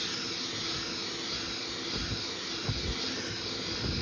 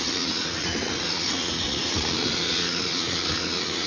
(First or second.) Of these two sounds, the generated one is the second